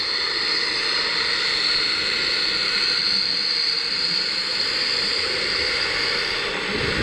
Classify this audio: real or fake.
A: real